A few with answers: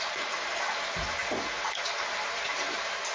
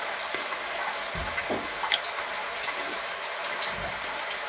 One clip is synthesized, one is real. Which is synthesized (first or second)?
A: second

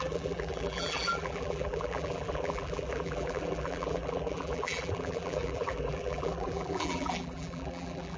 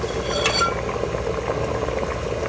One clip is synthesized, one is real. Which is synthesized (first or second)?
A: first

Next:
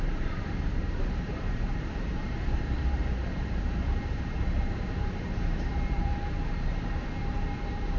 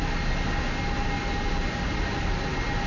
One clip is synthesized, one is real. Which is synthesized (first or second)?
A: first